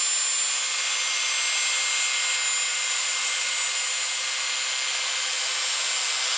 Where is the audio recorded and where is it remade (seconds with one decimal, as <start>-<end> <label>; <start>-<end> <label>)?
0.0-2.7 recorded; 2.7-3.5 remade; 3.5-6.4 recorded